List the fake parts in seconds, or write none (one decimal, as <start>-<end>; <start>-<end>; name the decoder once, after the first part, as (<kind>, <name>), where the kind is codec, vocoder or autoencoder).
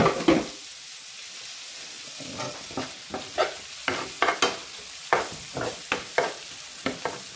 none